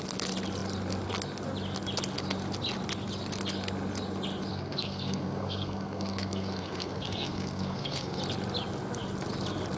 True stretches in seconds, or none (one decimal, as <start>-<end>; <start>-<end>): 0.0-4.5; 8.2-9.8